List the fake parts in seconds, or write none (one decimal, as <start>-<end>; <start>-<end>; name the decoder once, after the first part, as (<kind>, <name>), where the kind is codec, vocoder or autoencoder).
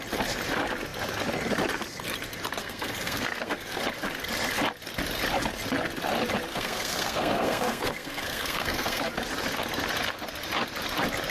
2.6-3.8 (codec, SNAC); 6.5-9.1